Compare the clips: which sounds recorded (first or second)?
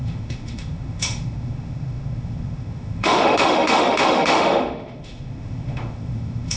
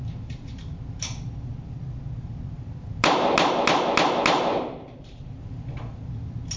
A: second